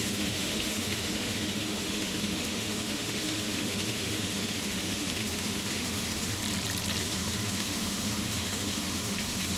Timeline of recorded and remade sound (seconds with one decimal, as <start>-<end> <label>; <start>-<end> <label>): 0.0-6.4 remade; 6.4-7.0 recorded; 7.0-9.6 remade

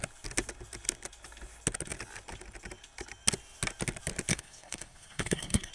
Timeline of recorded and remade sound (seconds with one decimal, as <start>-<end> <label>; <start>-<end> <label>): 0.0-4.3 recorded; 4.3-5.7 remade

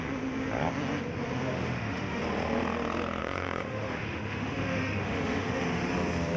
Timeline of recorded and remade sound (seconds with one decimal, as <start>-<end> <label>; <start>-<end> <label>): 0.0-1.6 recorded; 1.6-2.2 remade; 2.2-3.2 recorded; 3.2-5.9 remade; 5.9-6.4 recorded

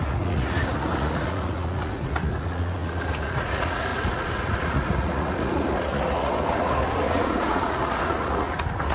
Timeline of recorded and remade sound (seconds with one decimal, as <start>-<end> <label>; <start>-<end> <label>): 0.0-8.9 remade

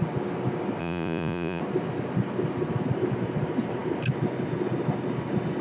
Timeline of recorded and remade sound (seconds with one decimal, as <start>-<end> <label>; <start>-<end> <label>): 0.0-0.8 recorded; 0.8-1.6 remade; 1.6-5.6 recorded

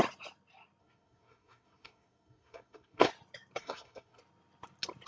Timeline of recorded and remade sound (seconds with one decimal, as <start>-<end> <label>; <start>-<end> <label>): 0.0-0.8 recorded; 0.8-3.1 remade; 3.1-3.6 recorded; 3.6-4.2 remade; 4.2-5.1 recorded